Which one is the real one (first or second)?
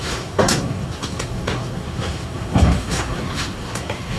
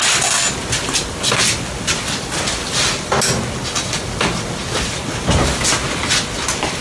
second